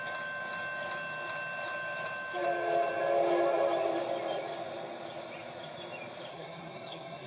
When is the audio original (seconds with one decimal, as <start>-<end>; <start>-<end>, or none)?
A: 0.0-6.3

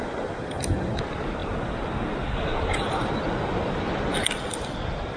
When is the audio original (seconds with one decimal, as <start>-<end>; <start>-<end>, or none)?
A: 0.0-5.2

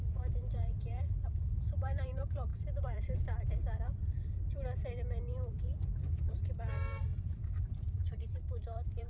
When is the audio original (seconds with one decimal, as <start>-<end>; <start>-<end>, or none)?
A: none